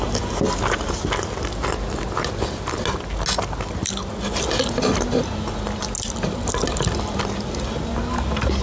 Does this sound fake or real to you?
real